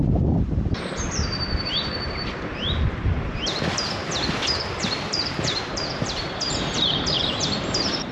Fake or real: fake